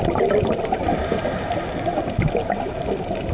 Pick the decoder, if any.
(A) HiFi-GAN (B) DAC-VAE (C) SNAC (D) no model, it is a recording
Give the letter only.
D